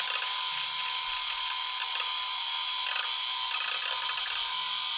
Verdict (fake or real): real